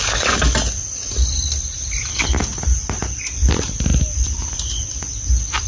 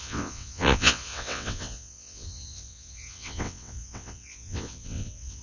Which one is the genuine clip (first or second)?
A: first